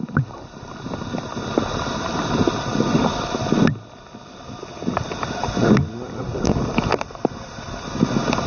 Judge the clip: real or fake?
real